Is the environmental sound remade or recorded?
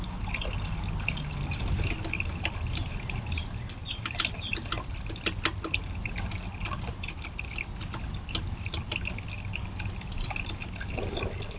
recorded